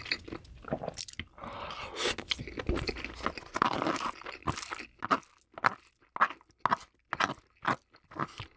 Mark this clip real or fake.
real